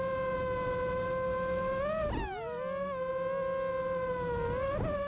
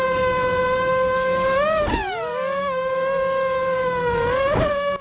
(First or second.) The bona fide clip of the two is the first